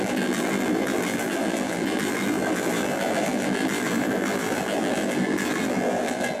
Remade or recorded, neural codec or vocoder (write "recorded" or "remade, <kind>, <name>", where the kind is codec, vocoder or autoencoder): remade, vocoder, BigVGAN v2